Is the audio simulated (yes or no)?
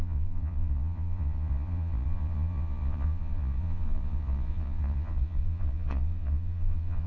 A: yes